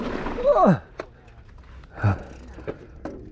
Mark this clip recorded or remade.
recorded